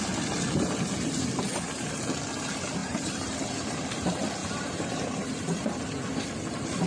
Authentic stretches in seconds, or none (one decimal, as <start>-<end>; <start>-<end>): 0.0-2.8; 3.4-4.4; 5.8-6.9